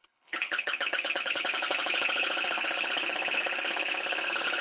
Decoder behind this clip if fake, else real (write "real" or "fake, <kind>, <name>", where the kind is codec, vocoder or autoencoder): fake, codec, HILCodec